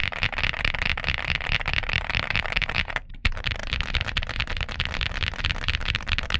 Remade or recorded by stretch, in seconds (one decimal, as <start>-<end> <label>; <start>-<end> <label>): 0.0-1.9 recorded; 1.9-3.6 remade; 3.6-5.8 recorded; 5.8-6.4 remade